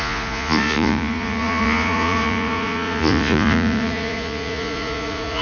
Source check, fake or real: fake